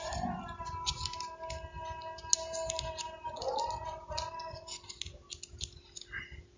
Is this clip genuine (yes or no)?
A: yes